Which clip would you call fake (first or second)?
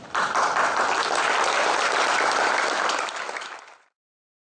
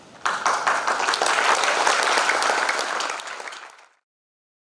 first